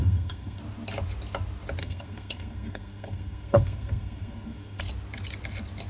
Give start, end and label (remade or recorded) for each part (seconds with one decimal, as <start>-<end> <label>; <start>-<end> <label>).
0.0-0.6 remade; 0.6-1.8 recorded; 1.8-4.8 remade; 4.8-5.9 recorded